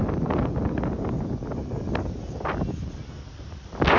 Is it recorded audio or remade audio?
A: recorded